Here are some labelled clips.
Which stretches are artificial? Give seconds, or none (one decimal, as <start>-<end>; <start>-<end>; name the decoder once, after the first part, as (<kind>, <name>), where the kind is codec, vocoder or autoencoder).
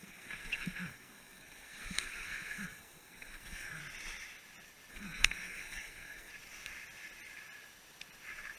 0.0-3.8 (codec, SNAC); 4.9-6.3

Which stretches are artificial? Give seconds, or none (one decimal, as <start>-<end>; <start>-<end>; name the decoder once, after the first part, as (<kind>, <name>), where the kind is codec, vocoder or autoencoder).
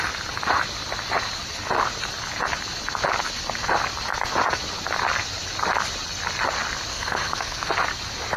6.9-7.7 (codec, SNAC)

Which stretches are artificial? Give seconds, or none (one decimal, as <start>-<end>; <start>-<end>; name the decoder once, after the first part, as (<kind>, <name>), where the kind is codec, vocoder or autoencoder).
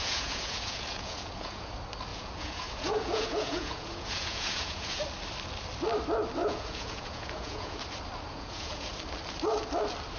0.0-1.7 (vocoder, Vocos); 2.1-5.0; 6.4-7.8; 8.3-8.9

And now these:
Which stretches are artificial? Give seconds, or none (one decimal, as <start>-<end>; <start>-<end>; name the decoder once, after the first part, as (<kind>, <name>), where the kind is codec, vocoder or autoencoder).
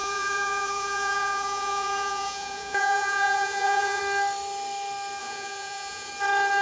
0.0-4.0 (vocoder, Vocos); 5.2-6.1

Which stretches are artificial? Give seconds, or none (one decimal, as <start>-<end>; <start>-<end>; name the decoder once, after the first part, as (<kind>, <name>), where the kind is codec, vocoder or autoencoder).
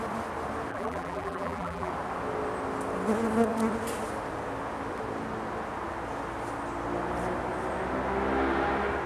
0.7-1.9 (vocoder, BigVGAN v2)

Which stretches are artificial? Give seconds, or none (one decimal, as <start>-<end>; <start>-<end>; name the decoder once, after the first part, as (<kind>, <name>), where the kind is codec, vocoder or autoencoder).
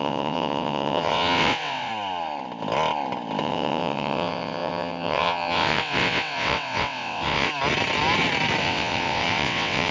0.0-1.9 (vocoder, WaveNeXt); 3.4-7.5; 8.6-9.9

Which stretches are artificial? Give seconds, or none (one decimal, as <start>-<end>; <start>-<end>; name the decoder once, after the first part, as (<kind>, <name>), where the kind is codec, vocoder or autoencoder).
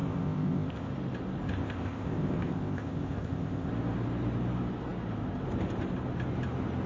0.0-0.9 (codec, ZipCodec); 1.5-3.7